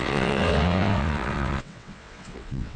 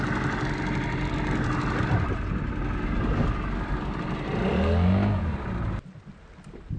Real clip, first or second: second